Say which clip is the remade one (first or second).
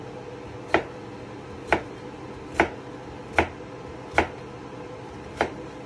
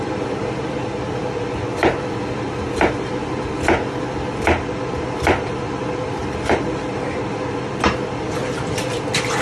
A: second